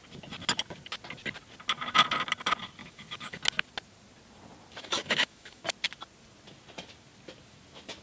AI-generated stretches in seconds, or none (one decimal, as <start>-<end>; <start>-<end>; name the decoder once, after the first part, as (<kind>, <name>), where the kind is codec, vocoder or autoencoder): 2.8-3.4 (autoencoder, DAC-VAE); 4.8-5.6